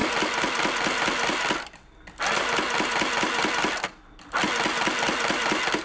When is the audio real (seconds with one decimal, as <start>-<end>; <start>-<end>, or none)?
0.0-5.8